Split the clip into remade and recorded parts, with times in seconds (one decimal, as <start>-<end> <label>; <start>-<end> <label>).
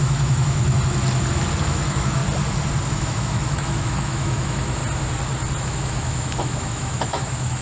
0.0-0.6 remade; 0.6-1.6 recorded; 1.6-2.2 remade; 2.2-2.9 recorded; 2.9-4.8 remade; 4.8-5.6 recorded; 5.6-7.6 remade